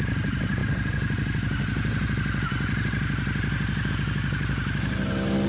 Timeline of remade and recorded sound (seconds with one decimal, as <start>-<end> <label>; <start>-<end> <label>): 0.0-5.5 recorded